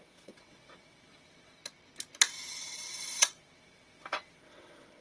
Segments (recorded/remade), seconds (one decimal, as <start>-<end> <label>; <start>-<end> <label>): 0.0-1.6 remade; 1.6-2.5 recorded; 2.5-5.0 remade